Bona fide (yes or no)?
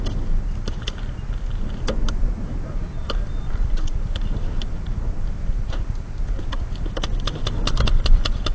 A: yes